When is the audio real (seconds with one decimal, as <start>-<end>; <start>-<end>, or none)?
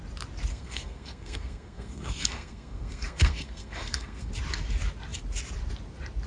0.0-0.5; 4.3-6.3